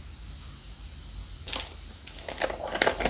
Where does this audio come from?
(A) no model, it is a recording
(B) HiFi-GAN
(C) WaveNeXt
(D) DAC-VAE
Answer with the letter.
A